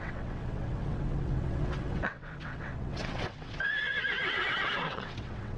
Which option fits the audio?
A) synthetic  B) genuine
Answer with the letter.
A